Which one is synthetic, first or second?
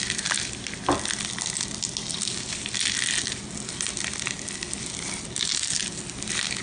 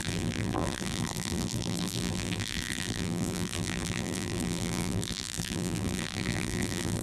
second